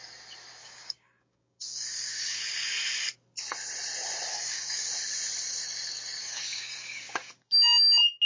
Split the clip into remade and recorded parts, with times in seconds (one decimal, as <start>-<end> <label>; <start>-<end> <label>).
0.0-0.6 recorded; 0.6-2.4 remade; 2.4-4.3 recorded; 4.3-4.9 remade; 4.9-6.2 recorded; 6.2-7.5 remade; 7.5-8.3 recorded